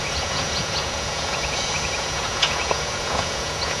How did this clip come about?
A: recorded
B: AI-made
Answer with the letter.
B